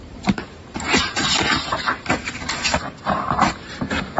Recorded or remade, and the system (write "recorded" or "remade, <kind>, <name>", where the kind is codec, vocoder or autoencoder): remade, vocoder, BigVGAN v2